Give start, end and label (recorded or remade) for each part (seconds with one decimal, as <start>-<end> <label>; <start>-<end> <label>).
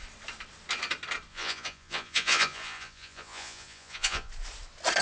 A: 0.0-1.3 recorded; 1.3-4.3 remade; 4.3-5.0 recorded